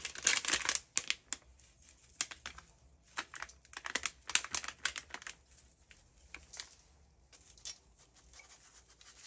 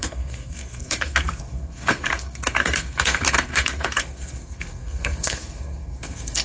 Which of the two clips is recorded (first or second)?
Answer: first